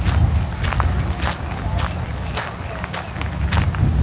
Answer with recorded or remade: recorded